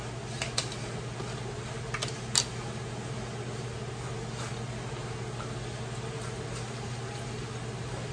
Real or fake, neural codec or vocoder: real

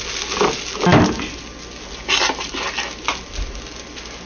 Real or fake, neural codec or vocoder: real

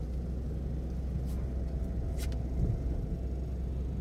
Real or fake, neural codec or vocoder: real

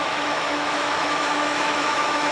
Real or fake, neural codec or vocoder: fake, autoencoder, DAC-VAE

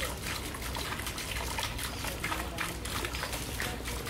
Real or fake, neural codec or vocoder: real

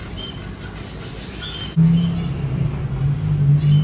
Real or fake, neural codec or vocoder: real